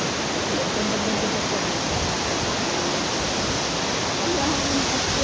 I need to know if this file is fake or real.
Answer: real